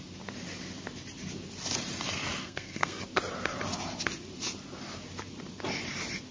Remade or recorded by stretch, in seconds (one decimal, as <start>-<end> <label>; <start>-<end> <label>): 0.0-2.4 recorded; 2.4-3.0 remade; 3.0-6.3 recorded